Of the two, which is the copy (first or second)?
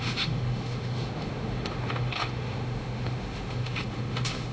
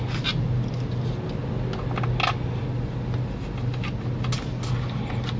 first